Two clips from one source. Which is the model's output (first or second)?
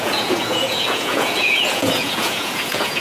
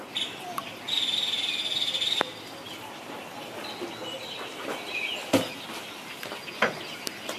first